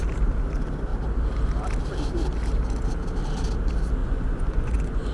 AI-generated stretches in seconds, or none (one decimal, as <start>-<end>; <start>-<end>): 4.0-5.1